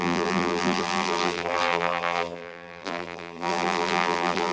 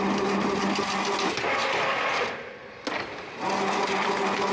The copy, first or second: first